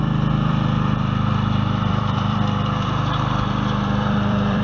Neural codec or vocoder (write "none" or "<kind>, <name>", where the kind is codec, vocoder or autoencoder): vocoder, BigVGAN v2